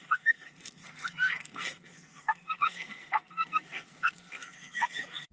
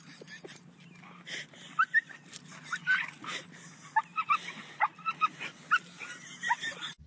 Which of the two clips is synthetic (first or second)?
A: first